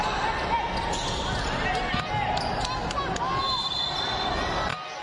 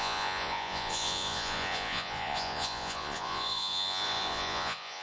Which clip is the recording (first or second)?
first